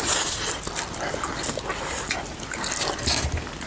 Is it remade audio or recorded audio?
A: recorded